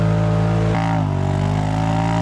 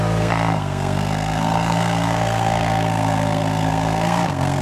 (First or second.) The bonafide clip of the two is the first